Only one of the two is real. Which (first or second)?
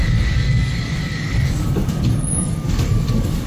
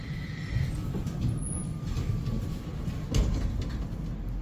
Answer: second